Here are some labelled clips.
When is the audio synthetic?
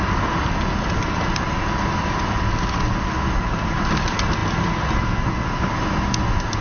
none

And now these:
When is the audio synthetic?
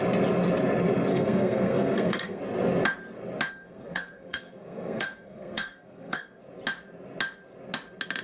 1.1-2.4 (codec, SNAC); 3.5-6.4